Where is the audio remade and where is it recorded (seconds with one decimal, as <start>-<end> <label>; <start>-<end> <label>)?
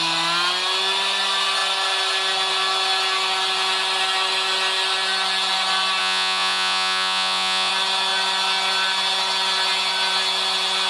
0.0-6.0 recorded; 6.0-7.7 remade; 7.7-10.9 recorded